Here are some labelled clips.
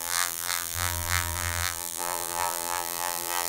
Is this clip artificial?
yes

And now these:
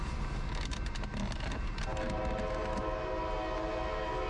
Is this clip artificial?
no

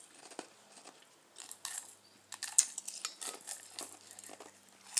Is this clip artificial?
no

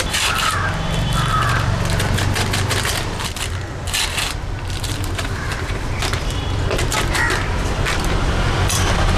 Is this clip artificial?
yes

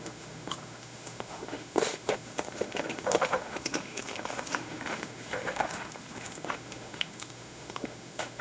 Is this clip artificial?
yes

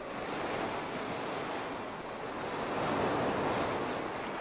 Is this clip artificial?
no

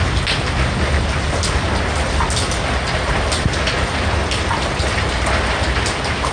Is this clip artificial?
no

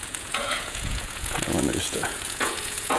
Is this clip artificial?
yes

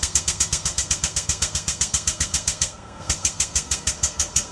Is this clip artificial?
yes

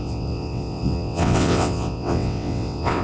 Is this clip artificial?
yes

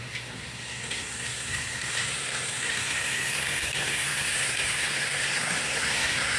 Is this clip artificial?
yes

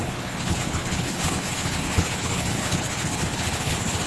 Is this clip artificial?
yes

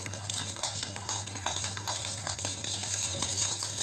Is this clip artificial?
yes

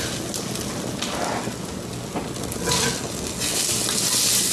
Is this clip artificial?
no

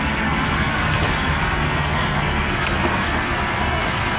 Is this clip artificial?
yes